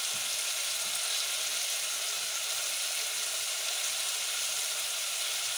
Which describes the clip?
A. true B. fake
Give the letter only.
A